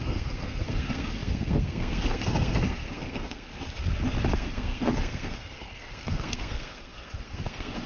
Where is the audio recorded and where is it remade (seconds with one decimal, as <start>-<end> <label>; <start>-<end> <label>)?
0.0-3.5 remade; 3.5-4.3 recorded; 4.3-7.9 remade